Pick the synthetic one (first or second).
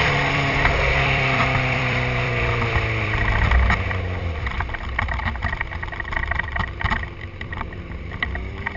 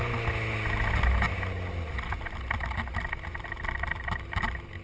first